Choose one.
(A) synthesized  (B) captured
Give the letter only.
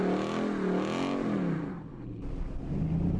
B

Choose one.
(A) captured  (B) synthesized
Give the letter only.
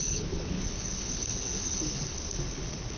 B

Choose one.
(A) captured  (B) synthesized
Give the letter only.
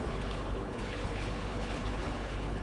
B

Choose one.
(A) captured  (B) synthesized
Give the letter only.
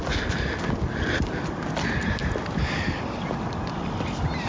A